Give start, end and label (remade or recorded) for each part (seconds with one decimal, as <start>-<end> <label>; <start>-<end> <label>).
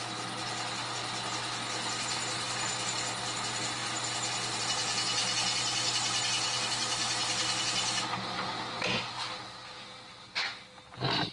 0.0-11.3 recorded